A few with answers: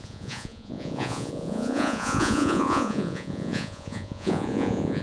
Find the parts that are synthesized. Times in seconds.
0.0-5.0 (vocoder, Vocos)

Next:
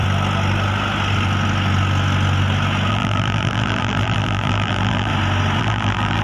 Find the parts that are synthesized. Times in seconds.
2.9-5.1 (vocoder, BigVGAN v2); 5.6-6.2

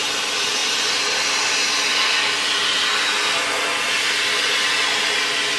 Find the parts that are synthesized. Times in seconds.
none

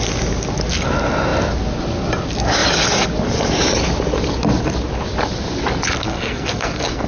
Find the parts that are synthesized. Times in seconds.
6.0-7.1 (codec, SNAC)

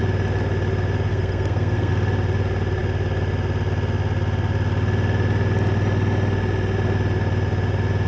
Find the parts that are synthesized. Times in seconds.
1.1-1.9 (codec, SNAC)

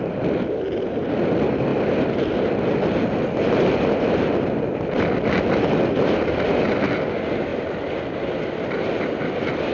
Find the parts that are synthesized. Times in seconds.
none